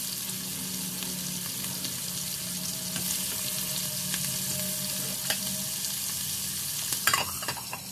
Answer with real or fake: real